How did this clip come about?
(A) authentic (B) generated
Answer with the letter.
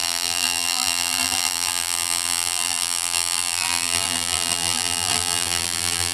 B